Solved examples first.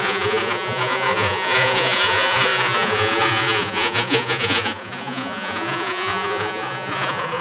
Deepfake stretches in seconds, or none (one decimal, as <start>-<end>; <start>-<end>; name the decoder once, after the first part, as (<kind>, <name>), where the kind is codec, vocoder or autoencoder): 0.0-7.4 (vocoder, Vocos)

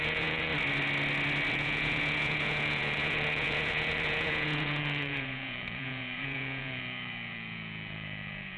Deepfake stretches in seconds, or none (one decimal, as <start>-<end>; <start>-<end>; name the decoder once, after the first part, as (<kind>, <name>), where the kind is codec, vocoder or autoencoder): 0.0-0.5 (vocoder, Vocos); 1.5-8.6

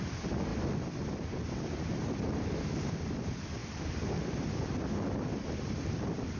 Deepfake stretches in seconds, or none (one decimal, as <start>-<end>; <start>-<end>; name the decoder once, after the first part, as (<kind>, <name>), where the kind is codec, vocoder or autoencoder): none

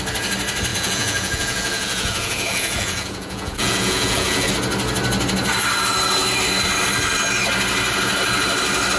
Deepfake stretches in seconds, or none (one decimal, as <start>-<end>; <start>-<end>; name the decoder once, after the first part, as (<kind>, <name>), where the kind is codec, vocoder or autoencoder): 0.7-4.5 (vocoder, Vocos)